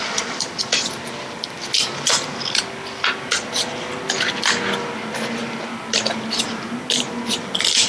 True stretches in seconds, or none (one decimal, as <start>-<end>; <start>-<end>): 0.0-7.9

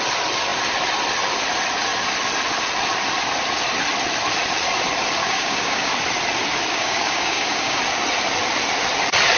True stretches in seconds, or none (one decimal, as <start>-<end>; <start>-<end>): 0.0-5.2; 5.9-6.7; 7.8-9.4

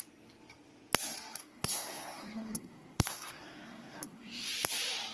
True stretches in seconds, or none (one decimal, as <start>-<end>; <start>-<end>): 0.0-1.4; 4.5-5.1

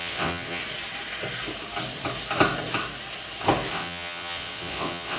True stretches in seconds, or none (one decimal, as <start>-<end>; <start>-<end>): 0.6-3.7